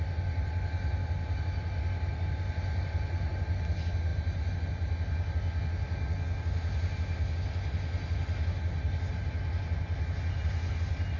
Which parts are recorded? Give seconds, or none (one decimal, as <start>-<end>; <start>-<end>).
0.0-11.2